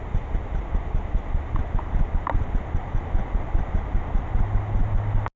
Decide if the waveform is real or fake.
real